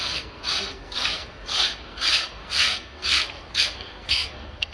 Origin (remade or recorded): remade